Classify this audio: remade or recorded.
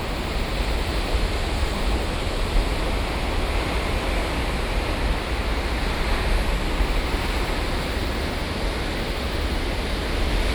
recorded